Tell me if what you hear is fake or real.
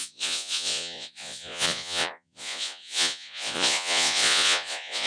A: fake